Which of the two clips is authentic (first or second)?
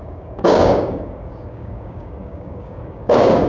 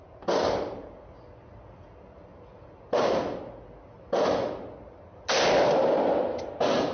second